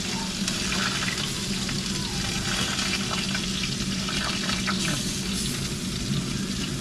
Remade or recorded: recorded